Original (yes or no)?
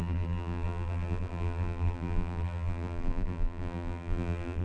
no